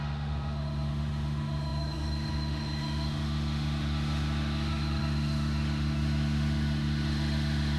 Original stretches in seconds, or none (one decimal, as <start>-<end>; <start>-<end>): none